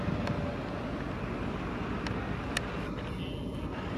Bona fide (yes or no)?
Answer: yes